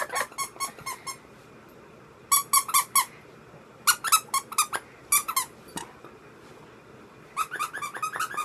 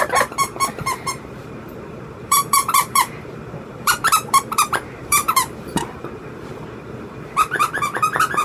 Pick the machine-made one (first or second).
second